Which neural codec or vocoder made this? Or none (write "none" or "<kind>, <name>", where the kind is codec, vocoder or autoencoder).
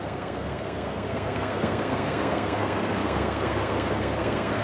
codec, SNAC